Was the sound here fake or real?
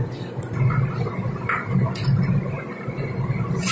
real